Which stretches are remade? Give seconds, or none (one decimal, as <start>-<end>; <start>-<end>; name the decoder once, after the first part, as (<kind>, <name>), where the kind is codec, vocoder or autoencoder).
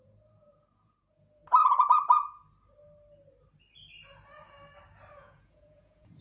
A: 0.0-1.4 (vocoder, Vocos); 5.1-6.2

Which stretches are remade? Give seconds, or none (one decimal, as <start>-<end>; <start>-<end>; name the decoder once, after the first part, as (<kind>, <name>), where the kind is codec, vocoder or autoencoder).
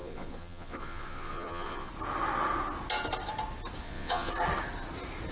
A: 0.0-1.9 (vocoder, Vocos); 3.8-4.3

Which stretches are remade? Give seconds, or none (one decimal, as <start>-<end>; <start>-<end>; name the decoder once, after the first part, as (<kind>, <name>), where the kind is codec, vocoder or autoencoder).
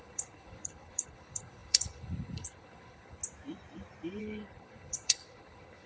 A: 0.0-3.2 (codec, HILCodec); 4.2-5.9